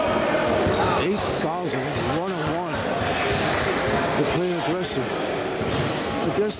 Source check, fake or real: real